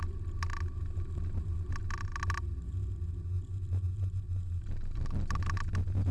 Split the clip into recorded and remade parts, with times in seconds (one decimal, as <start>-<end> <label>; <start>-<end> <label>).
0.0-6.1 recorded

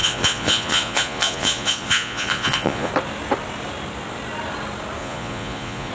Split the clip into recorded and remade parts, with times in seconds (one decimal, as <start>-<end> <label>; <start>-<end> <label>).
0.0-2.9 remade; 2.9-5.0 recorded; 5.0-5.9 remade

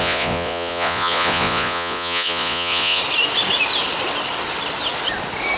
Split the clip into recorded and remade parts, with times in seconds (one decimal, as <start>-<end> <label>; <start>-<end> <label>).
0.0-3.0 remade; 3.0-5.6 recorded

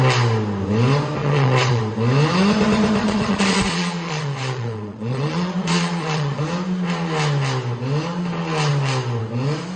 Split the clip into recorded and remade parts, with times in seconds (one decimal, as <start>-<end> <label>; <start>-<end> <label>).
0.0-1.2 recorded; 1.2-1.8 remade; 1.8-3.0 recorded; 3.0-6.4 remade; 6.4-9.8 recorded